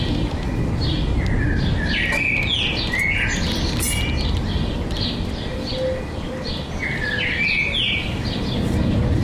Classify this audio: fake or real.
real